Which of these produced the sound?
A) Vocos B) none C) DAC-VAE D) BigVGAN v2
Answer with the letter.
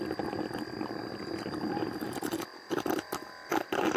B